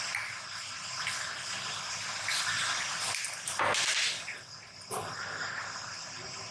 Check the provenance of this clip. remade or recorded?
recorded